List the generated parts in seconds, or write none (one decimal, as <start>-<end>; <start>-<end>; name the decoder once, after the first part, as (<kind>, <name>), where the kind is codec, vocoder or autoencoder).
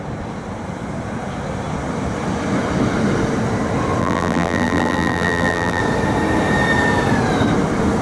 4.0-5.8 (vocoder, BigVGAN v2)